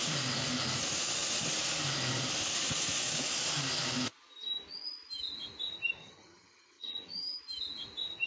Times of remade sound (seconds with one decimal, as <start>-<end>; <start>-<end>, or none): 6.0-7.4